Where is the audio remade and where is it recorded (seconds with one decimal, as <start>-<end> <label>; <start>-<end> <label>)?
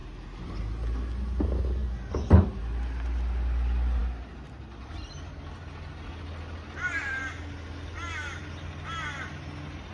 0.0-9.9 recorded